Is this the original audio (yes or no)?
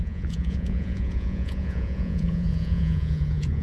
no